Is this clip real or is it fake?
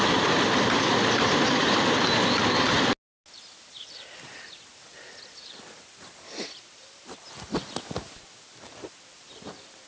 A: real